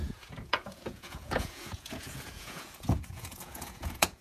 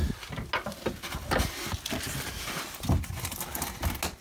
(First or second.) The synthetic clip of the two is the first